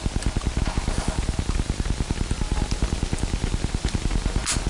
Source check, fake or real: fake